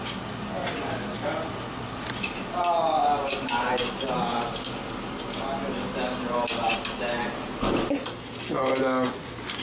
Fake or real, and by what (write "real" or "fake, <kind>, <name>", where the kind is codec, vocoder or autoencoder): real